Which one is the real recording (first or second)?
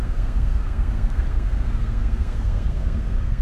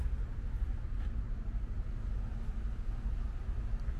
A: second